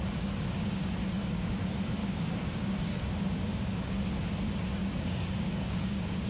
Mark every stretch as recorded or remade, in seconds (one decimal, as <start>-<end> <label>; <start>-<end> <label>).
0.0-1.0 recorded; 1.0-1.5 remade; 1.5-2.0 recorded; 2.0-4.1 remade; 4.1-4.8 recorded; 4.8-6.3 remade